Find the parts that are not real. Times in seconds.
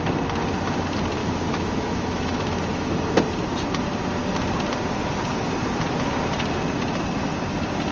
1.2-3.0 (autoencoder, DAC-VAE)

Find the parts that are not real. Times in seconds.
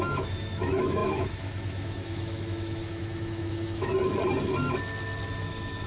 0.0-3.9 (autoencoder, DAC-VAE); 5.4-5.9